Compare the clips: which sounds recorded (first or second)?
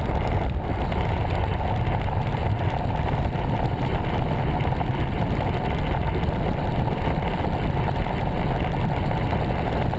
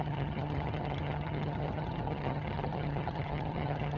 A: first